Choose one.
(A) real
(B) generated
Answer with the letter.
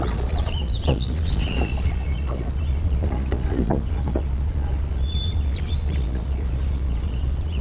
B